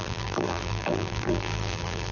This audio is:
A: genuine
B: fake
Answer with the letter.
B